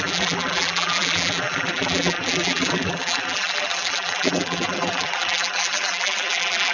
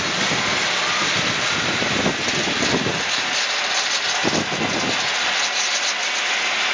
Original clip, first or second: second